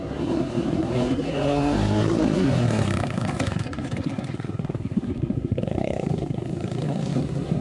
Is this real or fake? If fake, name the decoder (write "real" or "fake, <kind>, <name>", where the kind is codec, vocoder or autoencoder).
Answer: fake, codec, SNAC